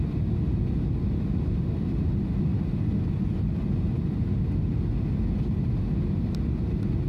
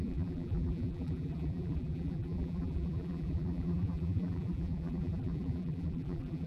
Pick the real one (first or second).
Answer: first